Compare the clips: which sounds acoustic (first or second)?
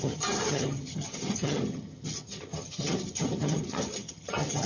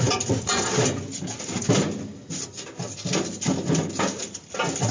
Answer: second